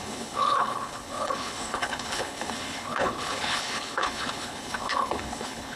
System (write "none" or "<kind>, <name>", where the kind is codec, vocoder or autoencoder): codec, HILCodec